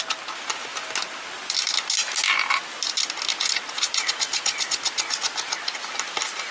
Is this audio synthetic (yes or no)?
no